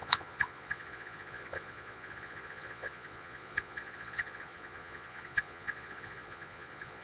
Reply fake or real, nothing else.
fake